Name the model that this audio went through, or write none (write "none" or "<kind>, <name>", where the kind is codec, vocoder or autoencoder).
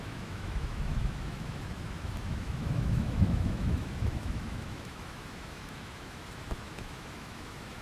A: autoencoder, DAC-VAE